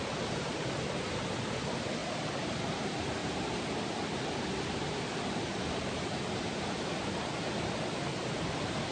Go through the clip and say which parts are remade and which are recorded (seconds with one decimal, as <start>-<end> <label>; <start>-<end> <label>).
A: 0.0-8.9 recorded